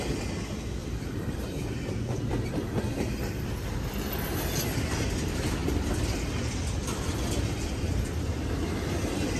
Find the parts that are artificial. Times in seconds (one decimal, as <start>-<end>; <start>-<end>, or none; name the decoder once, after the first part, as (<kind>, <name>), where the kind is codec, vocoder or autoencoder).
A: 0.8-3.5 (vocoder, BigVGAN v2); 5.6-6.3; 6.8-7.7

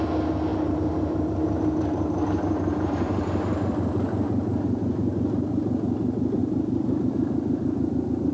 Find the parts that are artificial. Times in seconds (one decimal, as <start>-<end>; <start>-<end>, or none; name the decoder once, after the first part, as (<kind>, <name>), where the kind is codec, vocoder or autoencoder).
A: 0.5-5.5 (vocoder, BigVGAN v2); 6.4-7.1

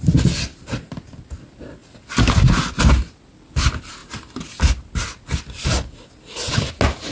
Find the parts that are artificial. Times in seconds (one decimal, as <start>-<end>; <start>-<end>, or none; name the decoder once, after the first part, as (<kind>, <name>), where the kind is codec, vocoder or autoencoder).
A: none

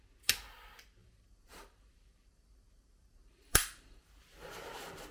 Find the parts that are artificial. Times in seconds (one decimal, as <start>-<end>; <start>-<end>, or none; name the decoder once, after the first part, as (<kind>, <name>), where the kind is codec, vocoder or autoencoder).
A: 1.0-4.1 (vocoder, BigVGAN v2)